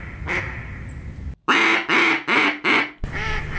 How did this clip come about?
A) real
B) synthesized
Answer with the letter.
A